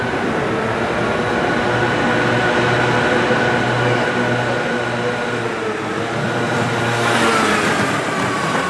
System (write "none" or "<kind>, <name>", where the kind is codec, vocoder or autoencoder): none